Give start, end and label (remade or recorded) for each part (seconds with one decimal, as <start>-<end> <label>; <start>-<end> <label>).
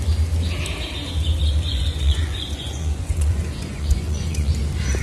0.0-1.7 recorded; 1.7-4.5 remade; 4.5-5.0 recorded